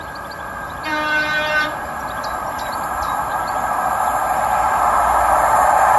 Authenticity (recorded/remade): remade